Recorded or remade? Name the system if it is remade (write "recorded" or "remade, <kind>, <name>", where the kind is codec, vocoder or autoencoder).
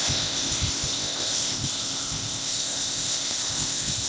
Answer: remade, codec, ZipCodec